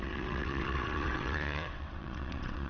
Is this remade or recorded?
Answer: remade